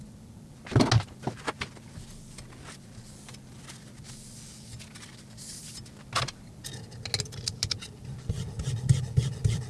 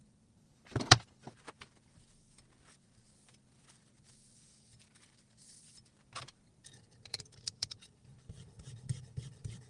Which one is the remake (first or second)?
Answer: second